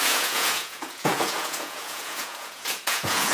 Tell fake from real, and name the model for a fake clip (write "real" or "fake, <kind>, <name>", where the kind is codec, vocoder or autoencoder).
fake, vocoder, Vocos